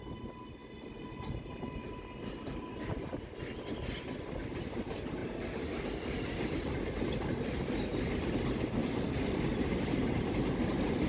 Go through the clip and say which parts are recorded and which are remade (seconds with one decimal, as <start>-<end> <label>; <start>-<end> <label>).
0.0-8.8 recorded; 8.8-10.5 remade; 10.5-11.1 recorded